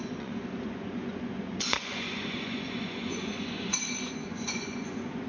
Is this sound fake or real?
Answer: fake